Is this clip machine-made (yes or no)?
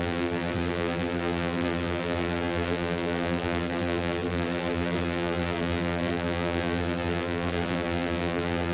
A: yes